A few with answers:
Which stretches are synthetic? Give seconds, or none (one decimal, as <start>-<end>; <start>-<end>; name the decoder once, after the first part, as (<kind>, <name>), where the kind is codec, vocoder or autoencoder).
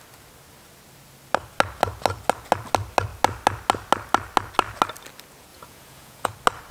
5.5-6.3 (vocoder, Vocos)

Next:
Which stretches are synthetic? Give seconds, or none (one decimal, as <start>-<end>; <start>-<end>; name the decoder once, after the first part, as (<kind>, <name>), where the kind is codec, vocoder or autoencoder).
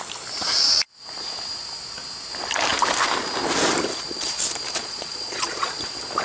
4.8-5.8 (vocoder, Vocos)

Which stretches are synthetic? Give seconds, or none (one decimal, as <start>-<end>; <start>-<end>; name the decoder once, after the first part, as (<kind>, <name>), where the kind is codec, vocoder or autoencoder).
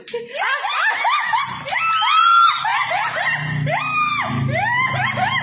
none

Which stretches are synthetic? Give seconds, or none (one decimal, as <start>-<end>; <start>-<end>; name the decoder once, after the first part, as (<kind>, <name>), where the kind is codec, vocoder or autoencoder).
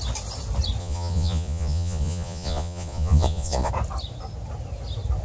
0.8-3.7 (vocoder, Vocos)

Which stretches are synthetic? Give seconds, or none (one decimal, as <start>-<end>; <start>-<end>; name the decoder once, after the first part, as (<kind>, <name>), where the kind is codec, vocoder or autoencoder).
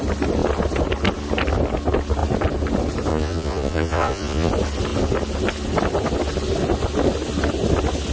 3.1-4.5 (vocoder, Vocos)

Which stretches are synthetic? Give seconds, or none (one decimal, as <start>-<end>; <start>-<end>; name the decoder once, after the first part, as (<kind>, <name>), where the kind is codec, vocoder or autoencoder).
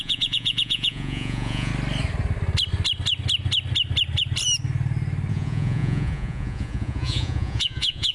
0.0-1.7 (vocoder, Vocos); 5.3-8.1